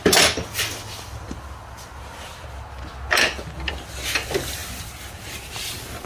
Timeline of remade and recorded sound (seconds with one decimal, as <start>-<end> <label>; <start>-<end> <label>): 0.0-6.1 recorded